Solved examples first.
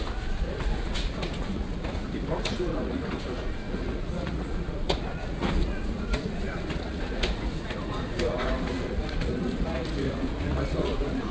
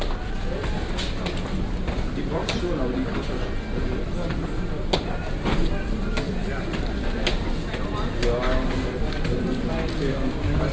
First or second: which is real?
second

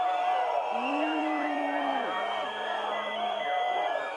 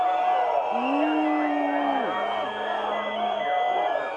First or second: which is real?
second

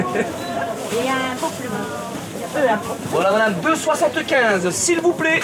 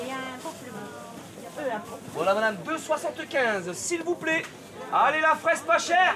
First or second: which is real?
second